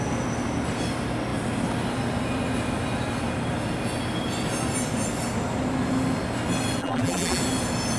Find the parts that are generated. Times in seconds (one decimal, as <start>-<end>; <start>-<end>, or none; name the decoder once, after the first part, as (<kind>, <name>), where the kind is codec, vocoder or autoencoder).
6.8-7.4 (vocoder, BigVGAN v2)